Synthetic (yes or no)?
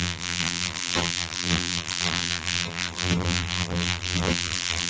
yes